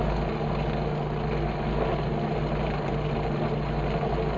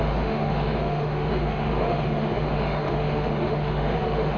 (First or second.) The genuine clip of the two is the first